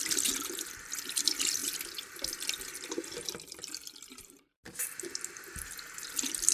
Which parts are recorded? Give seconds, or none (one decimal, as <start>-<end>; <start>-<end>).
0.0-6.5